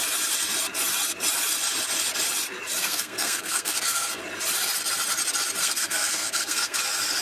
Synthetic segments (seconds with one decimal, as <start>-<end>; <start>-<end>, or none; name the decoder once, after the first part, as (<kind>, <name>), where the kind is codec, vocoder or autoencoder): 2.8-4.2 (codec, SNAC); 5.6-6.8